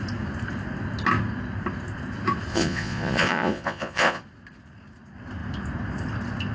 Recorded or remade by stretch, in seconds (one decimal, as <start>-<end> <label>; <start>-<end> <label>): 0.0-2.5 recorded; 2.5-4.2 remade; 4.2-6.5 recorded